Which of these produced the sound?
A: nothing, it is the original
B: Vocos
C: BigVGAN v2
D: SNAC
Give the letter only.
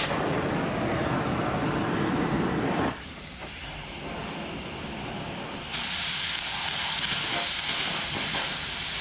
A